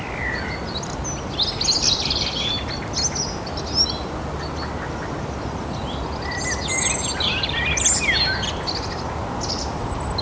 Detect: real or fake real